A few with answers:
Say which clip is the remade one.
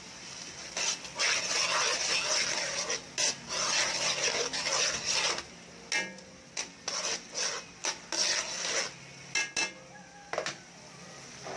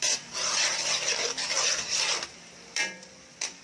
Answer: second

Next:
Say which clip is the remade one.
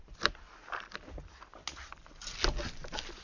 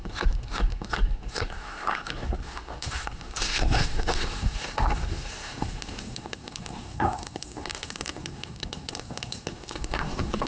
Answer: second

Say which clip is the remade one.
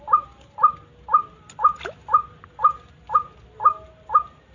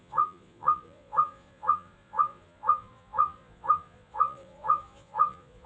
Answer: second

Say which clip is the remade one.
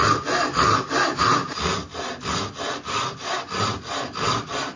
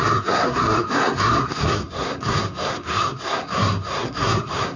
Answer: second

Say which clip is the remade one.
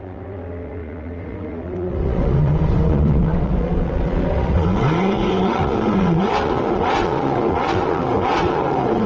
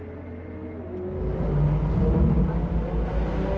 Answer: first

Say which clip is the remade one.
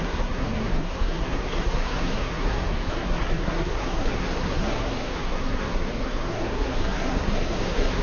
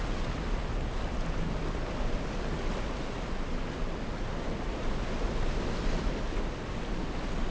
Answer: first